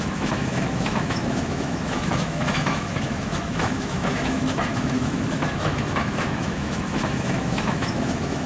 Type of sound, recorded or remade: remade